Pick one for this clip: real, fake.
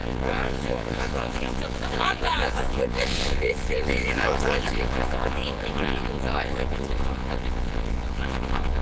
fake